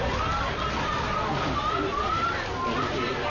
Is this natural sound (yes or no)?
yes